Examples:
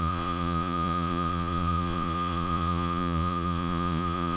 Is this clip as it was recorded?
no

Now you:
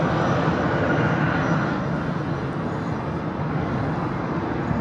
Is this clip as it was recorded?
yes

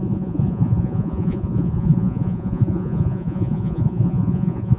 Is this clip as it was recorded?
no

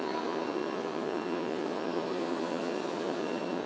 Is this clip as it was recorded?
no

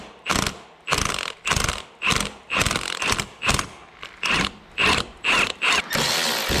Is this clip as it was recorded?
yes